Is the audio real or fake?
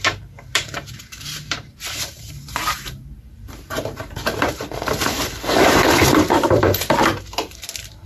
fake